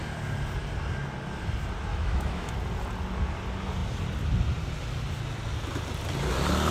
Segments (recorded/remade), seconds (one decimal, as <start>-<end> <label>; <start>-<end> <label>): 0.0-1.9 recorded; 1.9-2.5 remade; 2.5-6.7 recorded